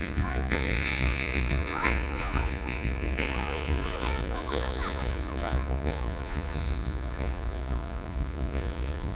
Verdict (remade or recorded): remade